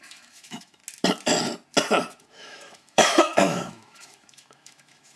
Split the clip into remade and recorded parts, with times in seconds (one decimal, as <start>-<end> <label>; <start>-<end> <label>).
0.0-0.8 remade; 0.8-2.2 recorded; 2.2-5.2 remade